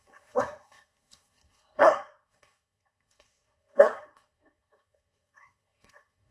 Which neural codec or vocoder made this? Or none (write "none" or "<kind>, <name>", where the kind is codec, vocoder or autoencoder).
codec, SNAC